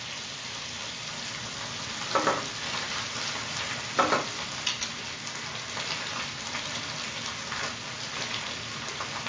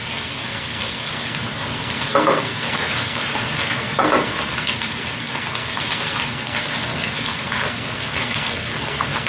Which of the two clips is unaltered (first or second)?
first